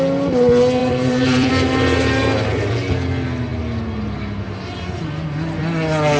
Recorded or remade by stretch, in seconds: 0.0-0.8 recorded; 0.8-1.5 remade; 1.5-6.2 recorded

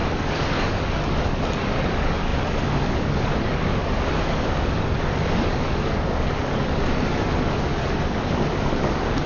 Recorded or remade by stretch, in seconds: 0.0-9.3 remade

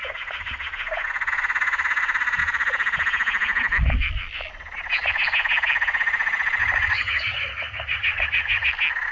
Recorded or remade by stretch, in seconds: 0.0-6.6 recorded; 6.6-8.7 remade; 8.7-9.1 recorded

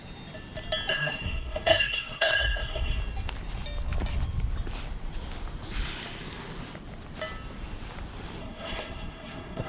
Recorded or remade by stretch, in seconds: 0.0-0.9 recorded; 0.9-3.0 remade; 3.0-8.4 recorded; 8.4-9.7 remade

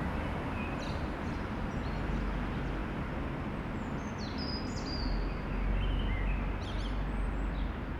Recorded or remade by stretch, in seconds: 0.0-8.0 recorded